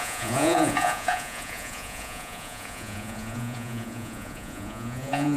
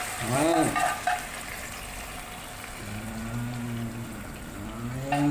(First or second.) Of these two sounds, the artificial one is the first